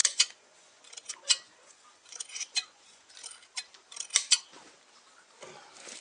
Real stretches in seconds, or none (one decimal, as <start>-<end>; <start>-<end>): 3.1-6.0